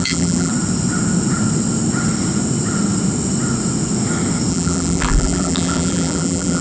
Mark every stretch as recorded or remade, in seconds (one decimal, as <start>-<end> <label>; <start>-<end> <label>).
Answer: 0.0-0.5 remade; 0.5-4.5 recorded; 4.5-6.6 remade